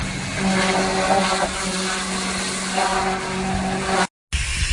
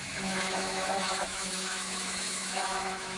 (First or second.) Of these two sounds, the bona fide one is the first